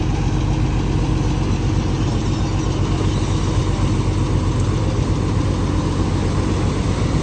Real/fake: real